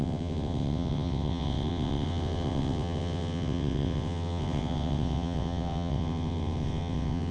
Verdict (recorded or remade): remade